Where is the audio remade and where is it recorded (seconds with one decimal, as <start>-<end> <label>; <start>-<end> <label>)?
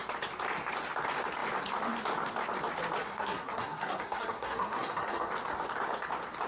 0.0-3.0 recorded; 3.0-5.3 remade; 5.3-6.5 recorded